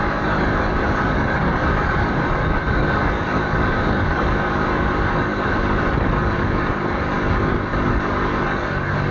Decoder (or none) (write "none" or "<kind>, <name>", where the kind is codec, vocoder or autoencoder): codec, DAC